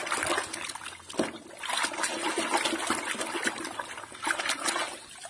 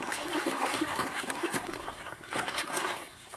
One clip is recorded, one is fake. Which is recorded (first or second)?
first